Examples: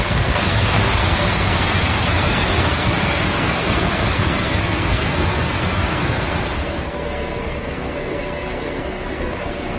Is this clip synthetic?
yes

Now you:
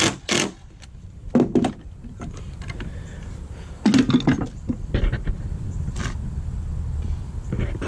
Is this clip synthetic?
no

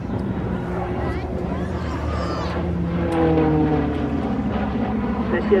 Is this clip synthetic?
yes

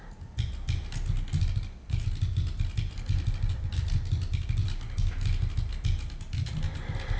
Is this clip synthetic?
no